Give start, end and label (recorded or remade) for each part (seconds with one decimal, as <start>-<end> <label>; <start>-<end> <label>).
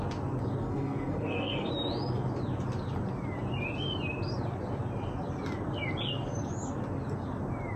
0.0-0.6 recorded; 0.6-1.7 remade; 1.7-7.8 recorded